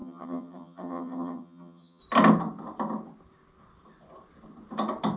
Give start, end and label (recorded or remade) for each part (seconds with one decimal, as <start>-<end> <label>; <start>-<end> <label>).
0.0-2.0 remade; 2.0-5.2 recorded